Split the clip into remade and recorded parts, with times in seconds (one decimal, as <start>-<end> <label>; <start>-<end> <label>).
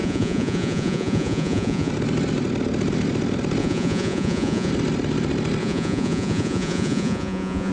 0.0-1.9 remade; 1.9-3.6 recorded; 3.6-4.7 remade; 4.7-5.6 recorded; 5.6-7.7 remade